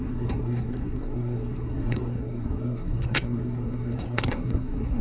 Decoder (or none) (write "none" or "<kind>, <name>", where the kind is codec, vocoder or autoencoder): codec, SNAC